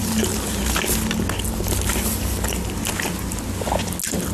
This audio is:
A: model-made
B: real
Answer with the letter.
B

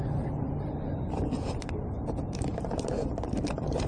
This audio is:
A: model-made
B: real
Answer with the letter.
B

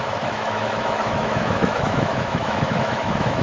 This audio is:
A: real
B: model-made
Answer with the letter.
B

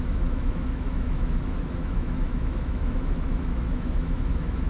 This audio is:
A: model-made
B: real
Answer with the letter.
A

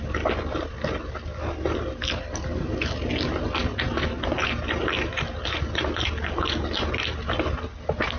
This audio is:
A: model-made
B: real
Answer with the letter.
B